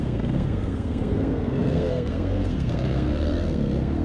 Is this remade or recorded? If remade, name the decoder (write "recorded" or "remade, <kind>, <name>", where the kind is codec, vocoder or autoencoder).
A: remade, codec, SNAC